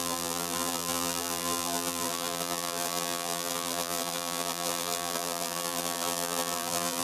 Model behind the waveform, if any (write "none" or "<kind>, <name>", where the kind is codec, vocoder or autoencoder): vocoder, BigVGAN v2